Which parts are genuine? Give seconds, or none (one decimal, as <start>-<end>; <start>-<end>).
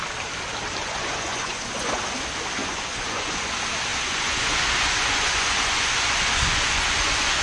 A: 0.0-0.8; 2.0-2.6; 3.5-3.9